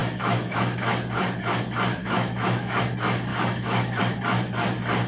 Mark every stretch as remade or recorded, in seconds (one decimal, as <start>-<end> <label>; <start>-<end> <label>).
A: 0.0-0.9 remade; 0.9-2.0 recorded; 2.0-2.8 remade; 2.8-3.3 recorded; 3.3-4.0 remade; 4.0-5.1 recorded